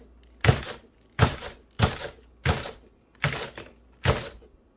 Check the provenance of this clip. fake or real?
real